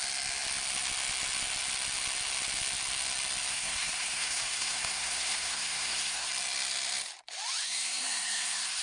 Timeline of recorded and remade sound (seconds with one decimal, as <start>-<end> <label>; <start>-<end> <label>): 0.0-3.5 recorded; 3.5-6.3 remade; 6.3-7.6 recorded; 7.6-8.8 remade

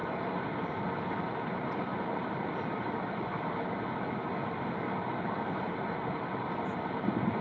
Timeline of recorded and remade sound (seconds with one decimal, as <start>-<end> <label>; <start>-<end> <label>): 0.0-1.9 recorded; 1.9-5.7 remade; 5.7-7.4 recorded

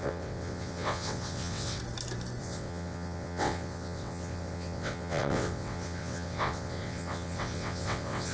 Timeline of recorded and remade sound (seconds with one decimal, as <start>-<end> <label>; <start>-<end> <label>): 0.0-1.8 remade; 1.8-2.4 recorded; 2.4-8.3 remade

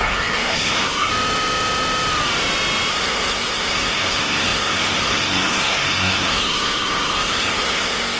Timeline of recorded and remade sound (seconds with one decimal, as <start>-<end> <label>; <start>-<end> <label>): 0.0-1.1 remade; 1.1-2.9 recorded; 2.9-8.2 remade

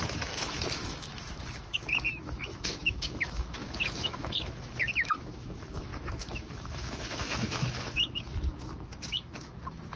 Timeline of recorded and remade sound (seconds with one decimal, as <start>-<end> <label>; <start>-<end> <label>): 0.0-10.0 remade

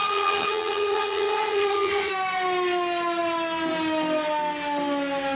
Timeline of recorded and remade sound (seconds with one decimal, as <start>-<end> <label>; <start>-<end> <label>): 0.0-2.1 remade; 2.1-5.3 recorded

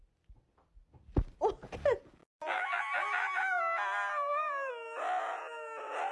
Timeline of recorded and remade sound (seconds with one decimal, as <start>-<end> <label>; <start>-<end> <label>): 0.0-2.2 recorded; 2.2-4.7 remade; 4.7-6.1 recorded

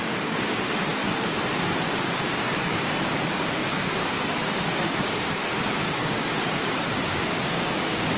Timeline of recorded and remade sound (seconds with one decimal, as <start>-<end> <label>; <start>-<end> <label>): 0.0-0.9 remade; 0.9-1.8 recorded; 1.8-8.2 remade